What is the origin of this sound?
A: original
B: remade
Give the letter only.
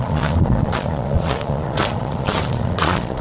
B